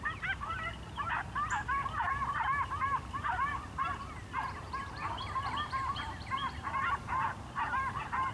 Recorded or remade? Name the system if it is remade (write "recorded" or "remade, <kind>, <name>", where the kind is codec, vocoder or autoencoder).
recorded